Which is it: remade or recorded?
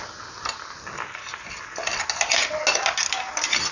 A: recorded